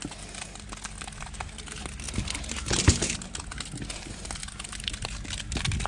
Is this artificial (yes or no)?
no